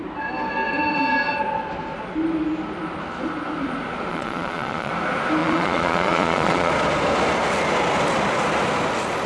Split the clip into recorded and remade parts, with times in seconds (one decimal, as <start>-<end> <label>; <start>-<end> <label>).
0.0-4.1 recorded; 4.1-4.9 remade; 4.9-5.4 recorded; 5.4-6.7 remade; 6.7-9.3 recorded